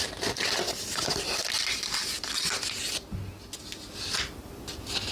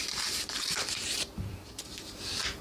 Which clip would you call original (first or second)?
first